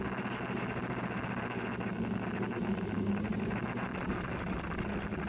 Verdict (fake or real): real